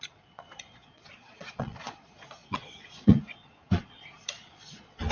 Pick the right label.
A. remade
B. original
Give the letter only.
A